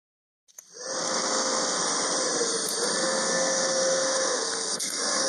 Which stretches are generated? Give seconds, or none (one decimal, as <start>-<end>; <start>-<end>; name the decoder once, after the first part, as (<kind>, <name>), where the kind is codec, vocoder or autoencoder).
1.0-1.8 (codec, SNAC); 3.0-5.3